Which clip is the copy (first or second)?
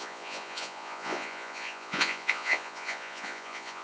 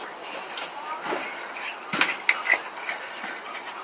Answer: first